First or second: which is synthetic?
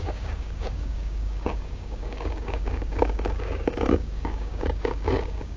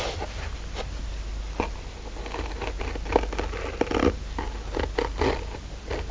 first